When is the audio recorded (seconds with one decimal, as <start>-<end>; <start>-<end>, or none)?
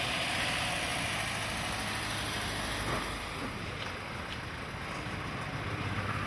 0.0-6.3